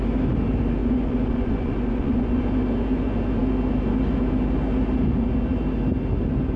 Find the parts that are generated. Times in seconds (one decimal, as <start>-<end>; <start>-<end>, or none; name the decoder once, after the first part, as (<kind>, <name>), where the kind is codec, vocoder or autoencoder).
0.8-2.4 (vocoder, Vocos)